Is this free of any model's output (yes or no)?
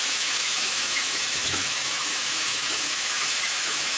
no